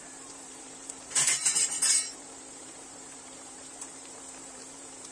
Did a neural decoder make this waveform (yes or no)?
yes